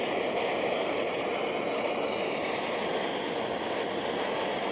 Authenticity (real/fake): real